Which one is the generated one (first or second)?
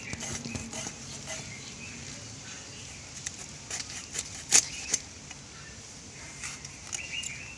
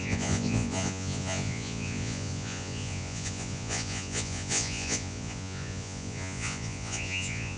second